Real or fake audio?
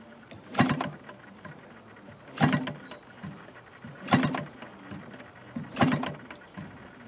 real